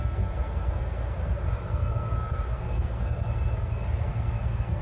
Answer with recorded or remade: remade